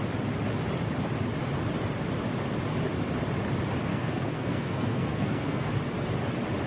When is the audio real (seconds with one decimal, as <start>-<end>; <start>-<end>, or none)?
0.0-3.9; 5.7-6.7